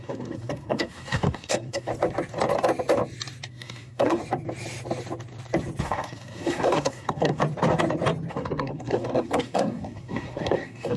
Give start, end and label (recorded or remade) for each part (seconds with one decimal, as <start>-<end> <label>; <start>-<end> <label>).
0.0-1.9 remade; 1.9-3.5 recorded; 3.5-4.2 remade; 4.2-5.8 recorded; 5.8-7.4 remade; 7.4-8.3 recorded; 8.3-11.0 remade